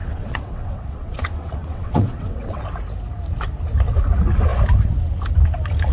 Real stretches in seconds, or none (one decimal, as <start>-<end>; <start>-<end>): 2.6-5.9